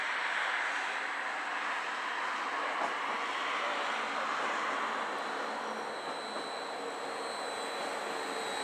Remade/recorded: recorded